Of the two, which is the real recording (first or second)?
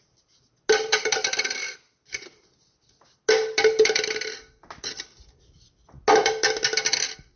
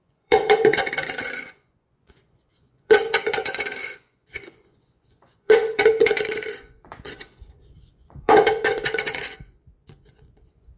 first